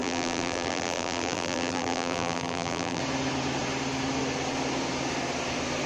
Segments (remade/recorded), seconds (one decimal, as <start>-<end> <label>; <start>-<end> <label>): 0.0-3.0 remade; 3.0-5.9 recorded